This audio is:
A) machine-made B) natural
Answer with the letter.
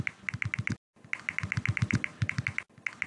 B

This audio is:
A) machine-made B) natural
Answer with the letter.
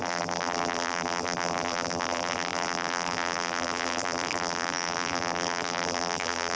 A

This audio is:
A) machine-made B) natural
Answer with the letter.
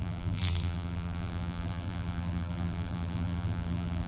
A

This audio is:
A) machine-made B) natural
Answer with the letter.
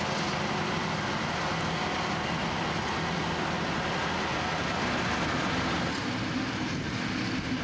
B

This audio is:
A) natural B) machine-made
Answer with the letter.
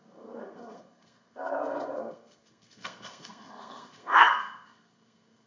B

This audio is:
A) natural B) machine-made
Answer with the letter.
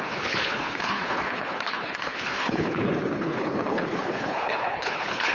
B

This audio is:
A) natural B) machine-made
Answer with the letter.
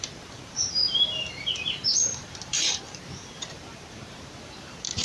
B